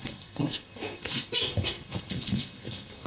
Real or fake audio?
fake